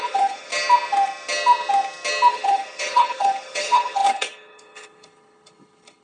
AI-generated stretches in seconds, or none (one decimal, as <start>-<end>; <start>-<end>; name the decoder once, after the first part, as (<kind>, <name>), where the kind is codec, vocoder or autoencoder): 0.0-0.5 (codec, HILCodec); 2.3-6.0